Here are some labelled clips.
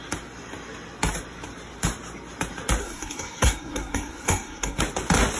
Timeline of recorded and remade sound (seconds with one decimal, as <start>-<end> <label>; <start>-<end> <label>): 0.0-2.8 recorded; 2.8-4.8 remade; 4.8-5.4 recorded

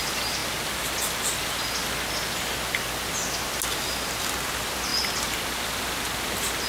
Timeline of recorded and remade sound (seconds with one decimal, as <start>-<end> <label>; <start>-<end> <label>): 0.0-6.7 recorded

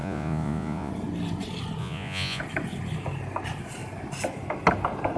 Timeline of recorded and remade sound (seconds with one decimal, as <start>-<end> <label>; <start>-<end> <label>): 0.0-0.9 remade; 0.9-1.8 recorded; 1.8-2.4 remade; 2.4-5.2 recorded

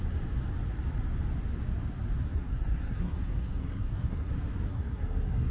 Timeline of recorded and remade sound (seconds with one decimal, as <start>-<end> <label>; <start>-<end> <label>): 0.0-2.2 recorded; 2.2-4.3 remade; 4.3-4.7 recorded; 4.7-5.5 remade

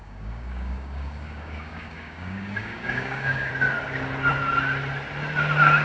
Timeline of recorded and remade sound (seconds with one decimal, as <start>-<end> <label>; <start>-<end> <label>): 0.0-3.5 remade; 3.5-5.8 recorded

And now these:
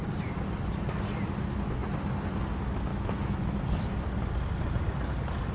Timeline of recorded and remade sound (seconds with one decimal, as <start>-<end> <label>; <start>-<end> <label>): 0.0-2.9 recorded; 2.9-3.5 remade; 3.5-5.5 recorded

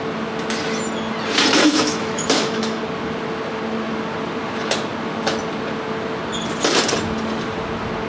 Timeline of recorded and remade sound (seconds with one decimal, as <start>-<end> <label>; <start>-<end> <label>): 0.0-1.6 recorded; 1.6-2.8 remade; 2.8-8.1 recorded